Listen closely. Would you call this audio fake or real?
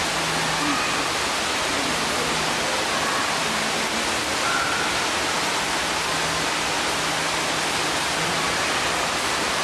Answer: real